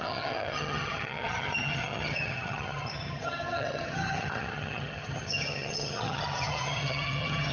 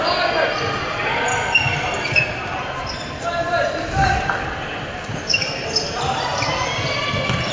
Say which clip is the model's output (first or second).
first